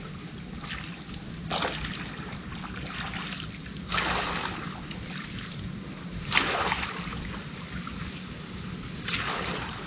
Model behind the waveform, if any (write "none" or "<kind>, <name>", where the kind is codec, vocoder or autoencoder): none